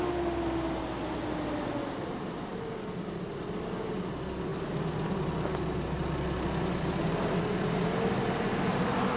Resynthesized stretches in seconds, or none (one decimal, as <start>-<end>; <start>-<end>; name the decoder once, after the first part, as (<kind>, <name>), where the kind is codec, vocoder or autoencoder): none